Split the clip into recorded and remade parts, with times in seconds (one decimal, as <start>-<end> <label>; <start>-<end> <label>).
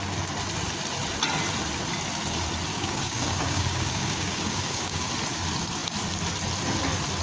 0.0-2.7 recorded; 2.7-5.1 remade; 5.1-7.2 recorded